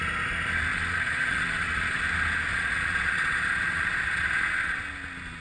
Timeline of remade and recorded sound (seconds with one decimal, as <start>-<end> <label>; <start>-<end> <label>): 0.0-0.7 recorded; 0.7-2.0 remade; 2.0-2.5 recorded; 2.5-4.8 remade; 4.8-5.4 recorded